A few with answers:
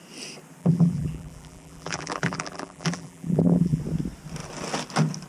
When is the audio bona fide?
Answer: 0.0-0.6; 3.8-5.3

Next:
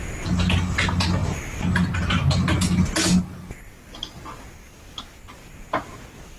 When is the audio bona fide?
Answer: 0.0-6.4

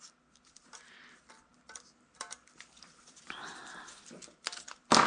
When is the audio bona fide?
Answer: 3.6-4.1

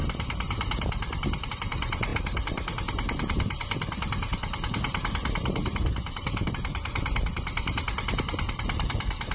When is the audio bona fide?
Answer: none

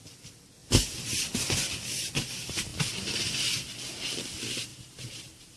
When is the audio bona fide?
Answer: 0.0-4.7